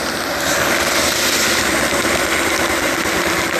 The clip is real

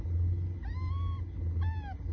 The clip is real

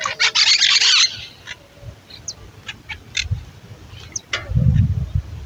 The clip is real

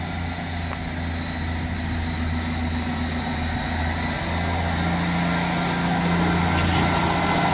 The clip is real